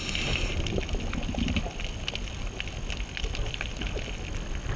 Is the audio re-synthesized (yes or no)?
no